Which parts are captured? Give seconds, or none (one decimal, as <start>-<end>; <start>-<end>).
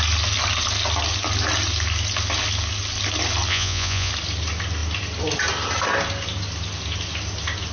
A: 0.0-3.5; 4.1-7.7